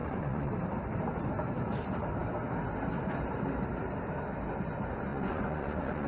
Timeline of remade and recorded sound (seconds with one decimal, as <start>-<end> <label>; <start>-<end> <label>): 0.0-0.5 remade; 0.5-5.1 recorded; 5.1-6.1 remade

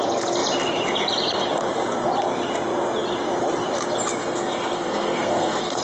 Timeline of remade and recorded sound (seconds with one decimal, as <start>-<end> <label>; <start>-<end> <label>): 0.0-4.2 recorded; 4.2-5.8 remade

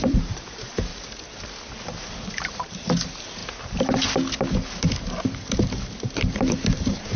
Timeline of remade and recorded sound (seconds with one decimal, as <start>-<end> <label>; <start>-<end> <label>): 0.0-0.9 remade; 0.9-2.1 recorded; 2.1-3.4 remade; 3.4-4.8 recorded; 4.8-7.2 remade

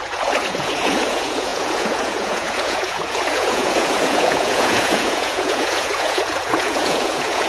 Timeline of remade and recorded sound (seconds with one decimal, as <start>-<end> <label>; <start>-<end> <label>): 0.0-7.5 remade

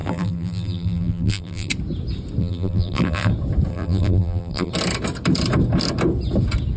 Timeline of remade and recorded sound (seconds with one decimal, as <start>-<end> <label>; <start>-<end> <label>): 0.0-1.7 remade; 1.7-2.4 recorded; 2.4-3.3 remade; 3.3-3.7 recorded; 3.7-4.7 remade; 4.7-6.8 recorded

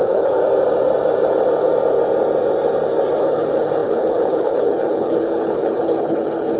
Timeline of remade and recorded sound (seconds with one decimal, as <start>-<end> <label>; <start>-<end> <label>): 0.0-0.4 remade; 0.4-3.2 recorded; 3.2-6.6 remade

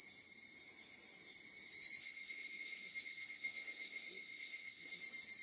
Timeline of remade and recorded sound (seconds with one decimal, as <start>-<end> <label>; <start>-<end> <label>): 0.0-2.0 recorded; 2.0-5.0 remade; 5.0-5.4 recorded

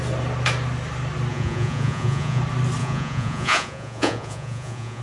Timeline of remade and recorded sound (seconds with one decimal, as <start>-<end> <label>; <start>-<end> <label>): 0.0-1.3 recorded; 1.3-2.4 remade; 2.4-2.8 recorded; 2.8-5.0 remade